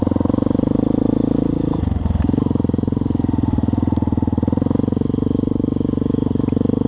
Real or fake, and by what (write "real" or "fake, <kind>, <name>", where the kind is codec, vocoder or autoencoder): real